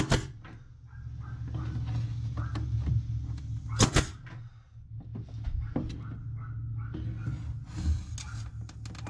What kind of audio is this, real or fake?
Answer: real